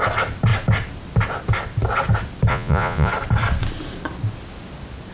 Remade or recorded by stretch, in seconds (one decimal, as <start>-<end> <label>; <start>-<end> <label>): 0.0-2.5 recorded; 2.5-3.1 remade; 3.1-5.1 recorded